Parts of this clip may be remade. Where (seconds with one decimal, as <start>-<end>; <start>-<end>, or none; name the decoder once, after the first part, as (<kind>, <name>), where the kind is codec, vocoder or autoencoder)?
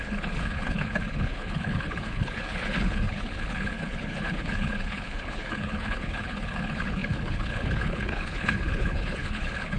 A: 0.0-9.8 (codec, HILCodec)